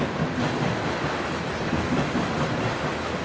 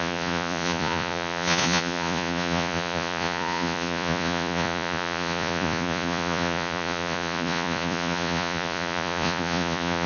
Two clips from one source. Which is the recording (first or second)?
first